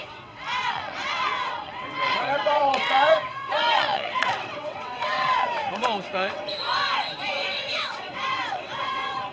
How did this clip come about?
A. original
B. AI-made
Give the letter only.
B